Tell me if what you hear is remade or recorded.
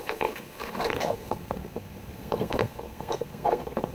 remade